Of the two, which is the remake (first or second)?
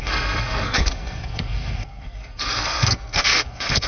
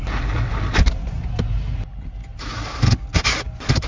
first